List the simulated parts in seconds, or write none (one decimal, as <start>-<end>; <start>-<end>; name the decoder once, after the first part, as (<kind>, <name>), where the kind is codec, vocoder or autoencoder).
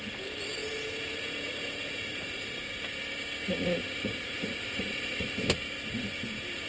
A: 2.1-2.7 (vocoder, Vocos); 3.4-5.5